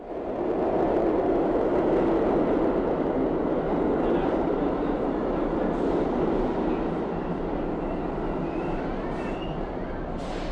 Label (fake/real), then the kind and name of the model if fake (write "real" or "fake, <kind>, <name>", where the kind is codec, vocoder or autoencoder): real